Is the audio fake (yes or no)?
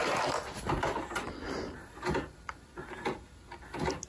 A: no